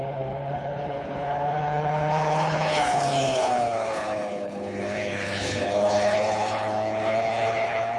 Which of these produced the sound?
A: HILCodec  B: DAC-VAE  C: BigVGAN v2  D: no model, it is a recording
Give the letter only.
A